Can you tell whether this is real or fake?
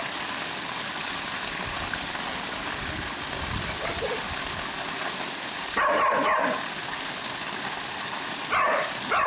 real